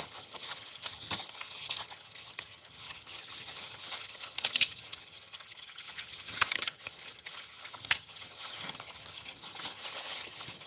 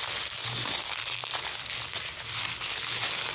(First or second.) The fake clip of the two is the first